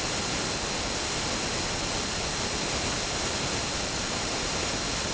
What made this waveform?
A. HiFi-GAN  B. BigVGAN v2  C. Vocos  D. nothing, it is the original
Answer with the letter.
D